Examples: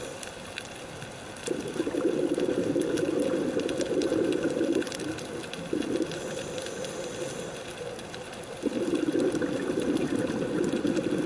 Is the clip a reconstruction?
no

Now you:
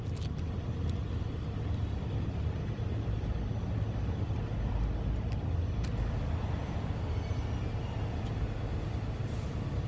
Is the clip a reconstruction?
no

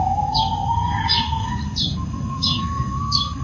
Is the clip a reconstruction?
yes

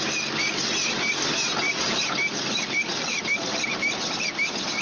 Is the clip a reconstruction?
no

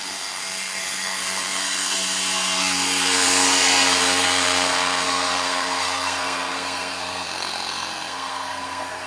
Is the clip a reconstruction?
yes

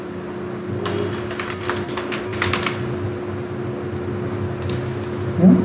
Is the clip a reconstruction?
no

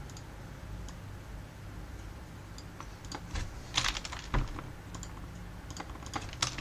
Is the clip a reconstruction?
no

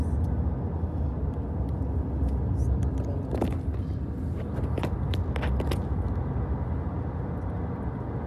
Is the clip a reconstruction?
no